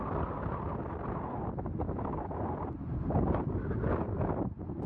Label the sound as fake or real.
real